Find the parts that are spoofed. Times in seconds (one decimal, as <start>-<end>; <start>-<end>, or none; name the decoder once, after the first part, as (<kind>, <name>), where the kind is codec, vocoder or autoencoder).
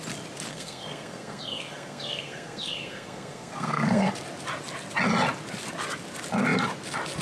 0.5-4.1 (codec, SNAC)